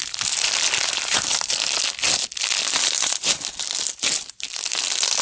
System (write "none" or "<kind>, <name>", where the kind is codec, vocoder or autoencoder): none